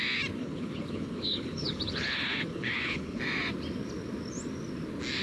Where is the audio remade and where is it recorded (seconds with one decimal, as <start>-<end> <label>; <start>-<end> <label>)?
0.0-0.4 recorded; 0.4-3.2 remade; 3.2-5.2 recorded